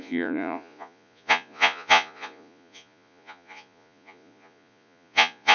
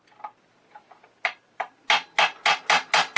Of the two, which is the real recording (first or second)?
second